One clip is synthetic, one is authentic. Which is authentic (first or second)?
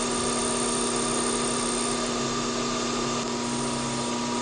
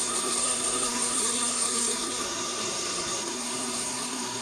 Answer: first